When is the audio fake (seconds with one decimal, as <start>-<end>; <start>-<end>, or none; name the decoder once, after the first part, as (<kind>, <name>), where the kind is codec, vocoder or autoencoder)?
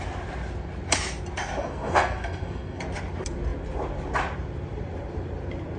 1.6-2.8 (codec, SNAC)